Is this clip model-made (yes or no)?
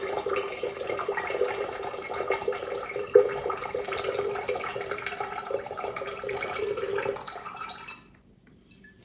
yes